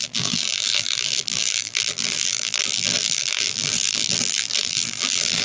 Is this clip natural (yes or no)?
no